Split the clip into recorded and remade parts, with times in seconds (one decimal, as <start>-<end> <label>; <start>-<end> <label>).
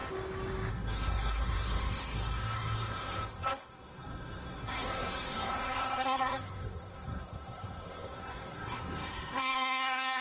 0.0-0.7 recorded; 0.7-10.2 remade